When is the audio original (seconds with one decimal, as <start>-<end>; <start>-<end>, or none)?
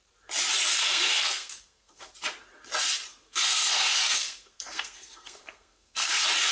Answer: 0.0-0.7; 2.1-3.1; 6.1-6.5